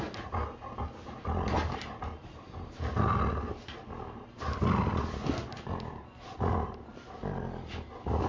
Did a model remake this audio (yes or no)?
no